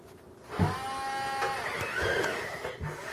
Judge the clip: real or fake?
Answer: real